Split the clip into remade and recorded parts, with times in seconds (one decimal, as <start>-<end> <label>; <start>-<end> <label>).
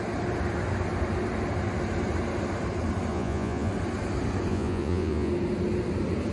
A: 0.0-3.1 recorded; 3.1-3.7 remade; 3.7-4.5 recorded; 4.5-5.3 remade; 5.3-6.3 recorded